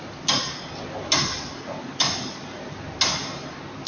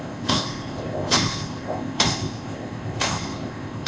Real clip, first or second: first